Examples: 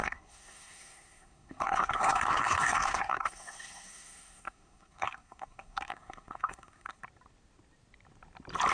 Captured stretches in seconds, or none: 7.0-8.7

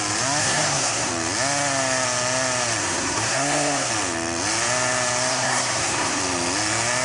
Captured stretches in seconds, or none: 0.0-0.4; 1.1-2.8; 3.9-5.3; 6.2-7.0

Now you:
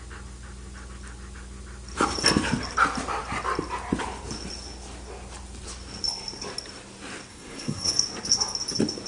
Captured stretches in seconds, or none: 0.0-7.3; 7.9-9.1

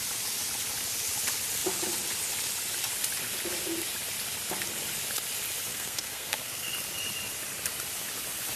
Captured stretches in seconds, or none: 0.0-5.7; 6.7-8.6

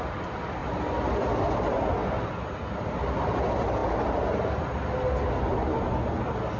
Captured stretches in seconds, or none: 0.0-6.6